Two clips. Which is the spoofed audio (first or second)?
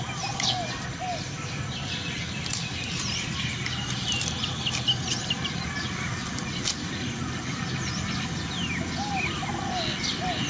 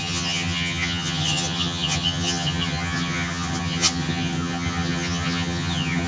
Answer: second